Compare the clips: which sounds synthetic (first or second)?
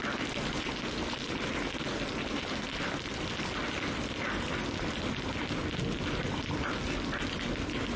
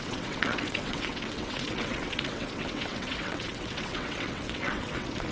second